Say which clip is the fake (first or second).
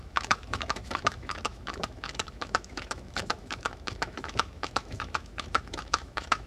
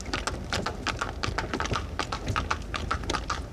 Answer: first